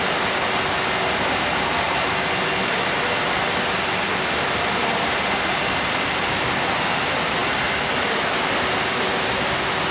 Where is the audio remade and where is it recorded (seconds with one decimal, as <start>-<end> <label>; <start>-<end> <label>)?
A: 0.0-9.9 recorded